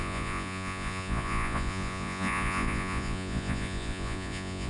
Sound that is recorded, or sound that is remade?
remade